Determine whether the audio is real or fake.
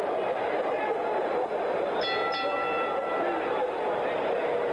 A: real